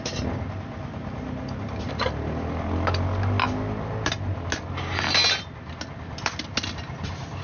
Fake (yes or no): no